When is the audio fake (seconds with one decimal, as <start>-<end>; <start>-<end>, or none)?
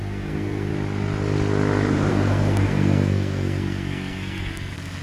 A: 0.0-0.7; 2.1-5.0